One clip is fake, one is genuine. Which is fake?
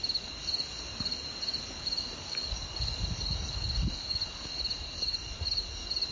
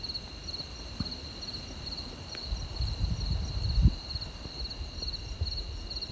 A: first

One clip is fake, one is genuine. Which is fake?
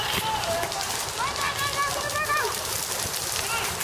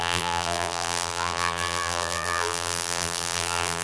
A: second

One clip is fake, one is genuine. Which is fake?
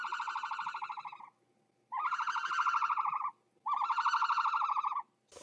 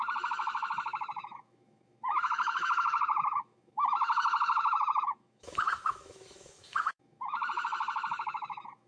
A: second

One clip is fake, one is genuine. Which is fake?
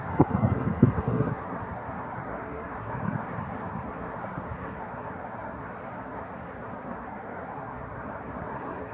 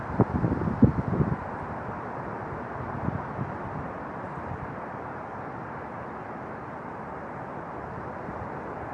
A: first